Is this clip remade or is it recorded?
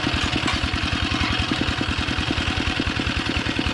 recorded